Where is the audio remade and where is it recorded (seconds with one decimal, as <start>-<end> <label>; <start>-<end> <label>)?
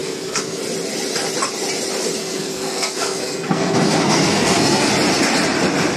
0.0-0.6 remade; 0.6-2.2 recorded; 2.2-4.9 remade; 4.9-6.0 recorded